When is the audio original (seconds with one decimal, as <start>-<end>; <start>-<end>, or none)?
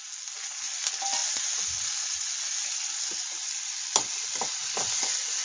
0.0-5.4